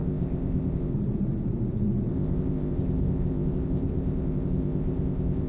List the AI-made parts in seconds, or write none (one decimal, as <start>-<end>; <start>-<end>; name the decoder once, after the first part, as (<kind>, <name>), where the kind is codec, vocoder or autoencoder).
0.0-0.9 (codec, ZipCodec); 2.1-5.5